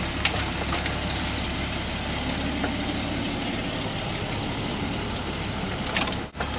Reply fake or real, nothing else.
real